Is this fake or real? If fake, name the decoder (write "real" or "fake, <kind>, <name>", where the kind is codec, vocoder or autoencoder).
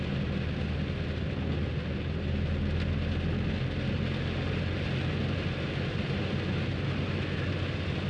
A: real